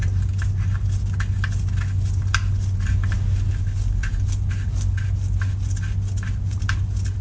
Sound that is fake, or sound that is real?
real